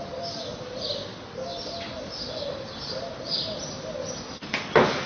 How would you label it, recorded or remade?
recorded